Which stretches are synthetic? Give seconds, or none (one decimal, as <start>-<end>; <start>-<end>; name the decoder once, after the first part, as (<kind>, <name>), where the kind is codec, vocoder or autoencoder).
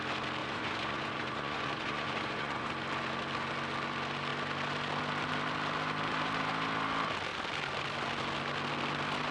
0.4-2.7 (vocoder, Vocos)